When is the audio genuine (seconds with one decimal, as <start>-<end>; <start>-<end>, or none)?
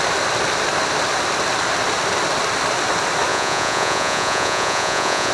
0.0-3.3